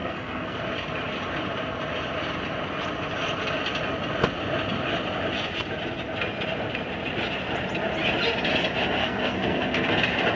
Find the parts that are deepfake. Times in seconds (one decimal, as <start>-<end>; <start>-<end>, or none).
0.0-0.6; 9.0-9.9